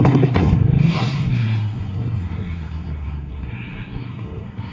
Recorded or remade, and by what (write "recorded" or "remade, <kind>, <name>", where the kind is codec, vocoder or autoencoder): remade, codec, SNAC